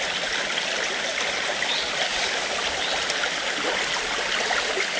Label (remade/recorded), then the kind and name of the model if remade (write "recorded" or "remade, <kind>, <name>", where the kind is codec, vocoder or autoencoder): recorded